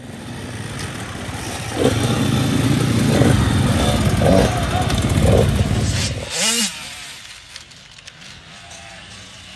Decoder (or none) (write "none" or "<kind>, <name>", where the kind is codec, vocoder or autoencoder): none